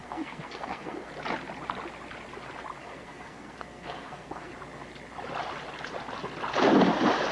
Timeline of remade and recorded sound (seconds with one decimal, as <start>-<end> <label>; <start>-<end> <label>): 0.0-1.1 remade; 1.1-2.8 recorded; 2.8-4.5 remade; 4.5-7.3 recorded